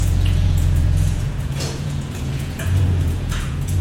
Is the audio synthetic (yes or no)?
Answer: yes